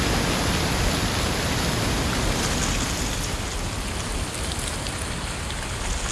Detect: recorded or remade recorded